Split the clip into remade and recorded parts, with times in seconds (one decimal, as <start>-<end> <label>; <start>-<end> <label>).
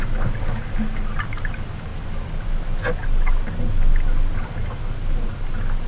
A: 0.0-5.9 recorded